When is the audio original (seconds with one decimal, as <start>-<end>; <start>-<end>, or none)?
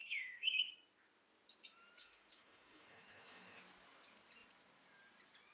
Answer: 0.7-2.0; 3.6-5.5